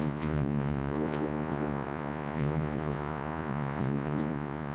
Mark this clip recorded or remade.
remade